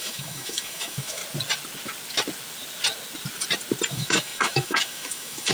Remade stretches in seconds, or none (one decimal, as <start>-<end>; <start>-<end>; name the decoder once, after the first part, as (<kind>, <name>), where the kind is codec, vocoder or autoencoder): 0.0-1.2 (autoencoder, DAC-VAE); 3.9-5.5